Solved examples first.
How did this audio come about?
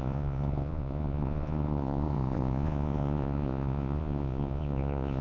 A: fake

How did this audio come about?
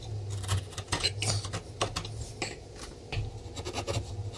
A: real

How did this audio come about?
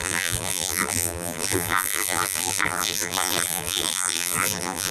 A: fake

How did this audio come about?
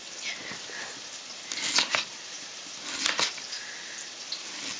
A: real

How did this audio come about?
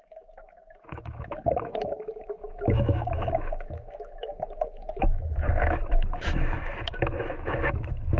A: fake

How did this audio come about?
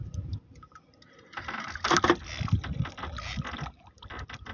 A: real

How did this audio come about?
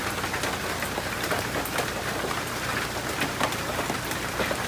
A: real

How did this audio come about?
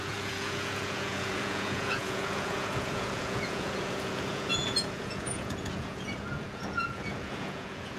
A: fake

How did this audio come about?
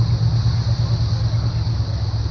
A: real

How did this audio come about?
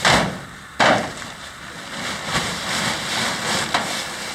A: real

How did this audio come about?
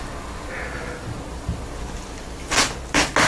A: real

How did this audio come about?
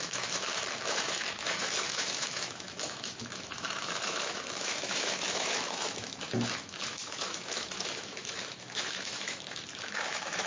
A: fake